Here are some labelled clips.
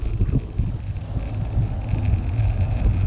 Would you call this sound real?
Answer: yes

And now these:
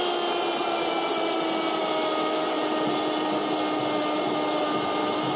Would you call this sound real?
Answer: yes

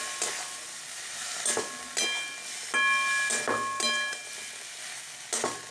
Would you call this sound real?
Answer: yes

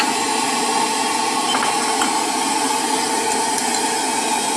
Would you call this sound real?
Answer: yes